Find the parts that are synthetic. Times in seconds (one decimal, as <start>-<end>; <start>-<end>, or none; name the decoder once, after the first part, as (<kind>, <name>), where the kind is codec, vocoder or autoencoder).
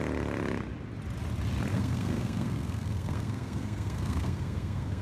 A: 1.7-5.0 (codec, SNAC)